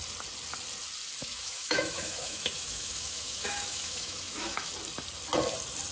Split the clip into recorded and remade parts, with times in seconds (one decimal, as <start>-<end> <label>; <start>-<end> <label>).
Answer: 0.0-1.2 recorded; 1.2-4.7 remade; 4.7-5.9 recorded